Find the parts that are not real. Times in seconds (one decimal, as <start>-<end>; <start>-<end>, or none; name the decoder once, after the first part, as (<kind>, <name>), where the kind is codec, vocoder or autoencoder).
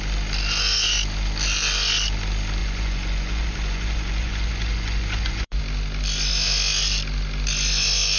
2.6-5.6 (vocoder, Vocos)